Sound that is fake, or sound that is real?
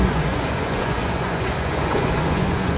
fake